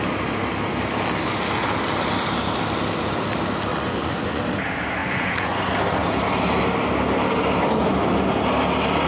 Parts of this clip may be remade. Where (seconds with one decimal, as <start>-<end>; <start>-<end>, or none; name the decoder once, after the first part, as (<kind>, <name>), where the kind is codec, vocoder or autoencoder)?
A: 3.7-4.4 (vocoder, Vocos); 5.0-5.6